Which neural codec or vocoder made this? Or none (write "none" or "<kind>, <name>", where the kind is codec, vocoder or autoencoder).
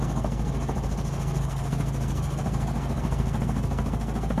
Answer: codec, SNAC